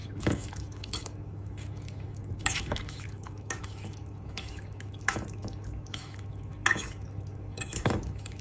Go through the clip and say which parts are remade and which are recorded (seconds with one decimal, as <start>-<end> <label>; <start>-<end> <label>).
0.0-8.4 remade